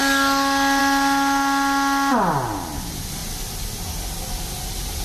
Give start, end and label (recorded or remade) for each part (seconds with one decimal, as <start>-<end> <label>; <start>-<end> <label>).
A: 0.0-5.0 recorded